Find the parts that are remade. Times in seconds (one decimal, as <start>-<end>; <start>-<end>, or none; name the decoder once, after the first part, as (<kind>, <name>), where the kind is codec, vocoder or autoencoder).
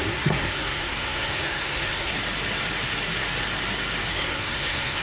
0.0-2.1 (codec, SNAC); 4.1-5.0